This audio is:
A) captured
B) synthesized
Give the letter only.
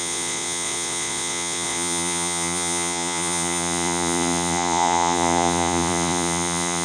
B